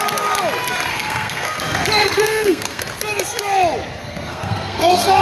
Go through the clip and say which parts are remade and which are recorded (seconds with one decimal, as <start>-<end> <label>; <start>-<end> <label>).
0.0-0.9 recorded; 0.9-1.6 remade; 1.6-2.0 recorded; 2.0-2.8 remade; 2.8-4.0 recorded; 4.0-5.2 remade